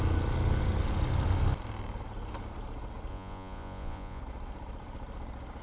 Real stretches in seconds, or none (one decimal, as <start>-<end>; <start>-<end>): 0.0-3.1; 4.2-5.6